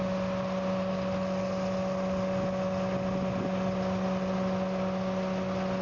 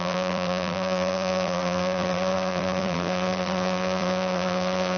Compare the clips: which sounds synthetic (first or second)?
second